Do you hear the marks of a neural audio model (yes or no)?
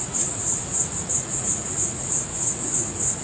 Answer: yes